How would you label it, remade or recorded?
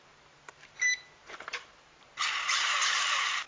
remade